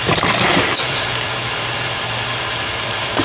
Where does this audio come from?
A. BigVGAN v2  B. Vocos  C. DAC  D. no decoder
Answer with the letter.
A